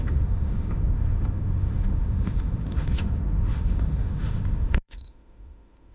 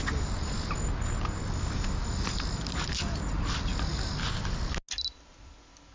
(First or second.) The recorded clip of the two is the second